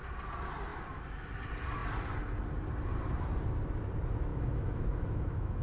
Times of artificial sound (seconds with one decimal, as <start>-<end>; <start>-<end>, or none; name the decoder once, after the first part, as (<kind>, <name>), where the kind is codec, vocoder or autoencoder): 4.3-5.6 (autoencoder, DAC-VAE)